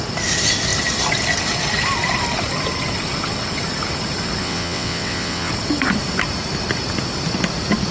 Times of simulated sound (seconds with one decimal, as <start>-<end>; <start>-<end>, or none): 4.4-5.5